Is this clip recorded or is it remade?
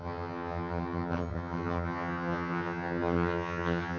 remade